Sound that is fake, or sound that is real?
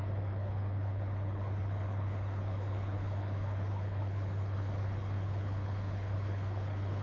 fake